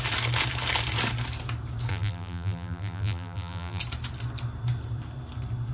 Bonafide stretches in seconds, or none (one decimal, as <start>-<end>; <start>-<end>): 0.0-1.9; 3.8-5.7